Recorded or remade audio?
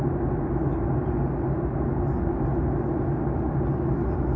recorded